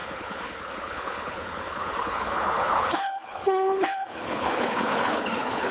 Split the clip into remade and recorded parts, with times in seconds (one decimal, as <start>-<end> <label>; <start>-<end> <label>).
0.0-5.7 remade